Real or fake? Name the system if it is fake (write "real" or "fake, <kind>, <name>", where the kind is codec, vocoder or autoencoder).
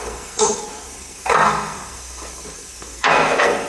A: fake, codec, SNAC